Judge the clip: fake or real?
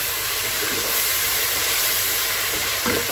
fake